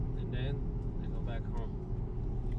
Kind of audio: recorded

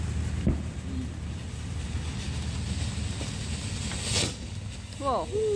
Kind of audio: recorded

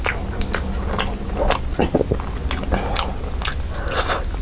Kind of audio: recorded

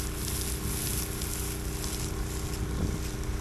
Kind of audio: recorded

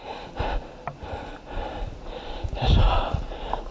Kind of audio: recorded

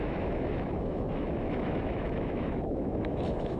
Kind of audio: remade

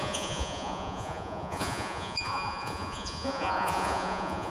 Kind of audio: remade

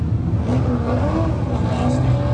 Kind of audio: recorded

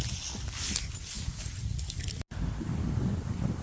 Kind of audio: recorded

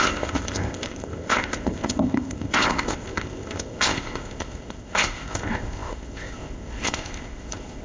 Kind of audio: remade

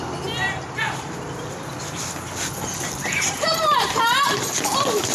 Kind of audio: recorded